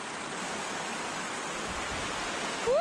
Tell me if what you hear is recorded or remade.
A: recorded